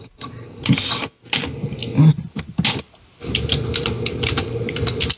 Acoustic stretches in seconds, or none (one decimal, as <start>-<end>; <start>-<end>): 0.0-5.2